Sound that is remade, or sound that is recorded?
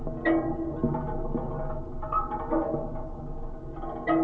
recorded